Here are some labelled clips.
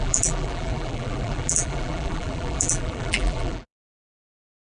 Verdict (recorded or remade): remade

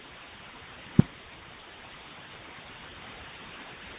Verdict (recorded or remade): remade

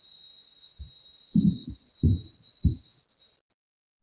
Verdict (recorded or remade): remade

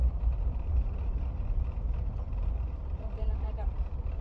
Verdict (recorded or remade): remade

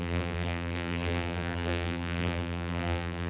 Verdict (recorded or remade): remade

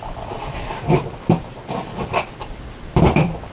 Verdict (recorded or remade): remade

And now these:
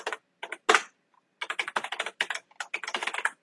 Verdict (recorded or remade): recorded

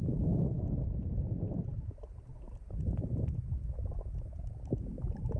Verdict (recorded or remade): remade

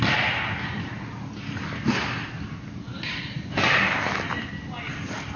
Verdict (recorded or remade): recorded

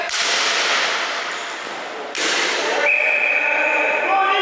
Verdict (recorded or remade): remade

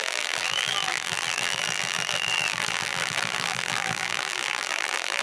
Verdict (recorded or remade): remade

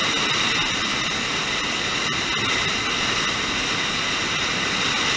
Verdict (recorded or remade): recorded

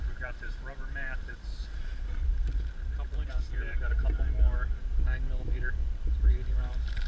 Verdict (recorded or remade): remade